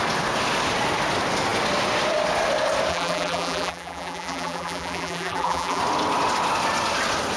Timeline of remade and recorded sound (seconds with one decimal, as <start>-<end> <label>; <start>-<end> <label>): 0.0-2.9 recorded; 2.9-5.8 remade; 5.8-7.4 recorded